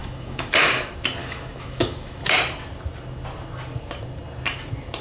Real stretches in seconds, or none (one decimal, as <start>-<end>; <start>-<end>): 0.7-1.2; 2.2-5.0